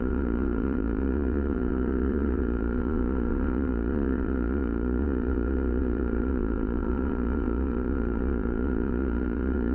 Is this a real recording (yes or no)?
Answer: no